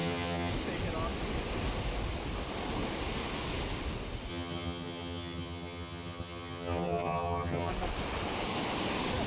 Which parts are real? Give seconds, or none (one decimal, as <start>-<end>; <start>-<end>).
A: 0.5-4.3; 7.7-9.3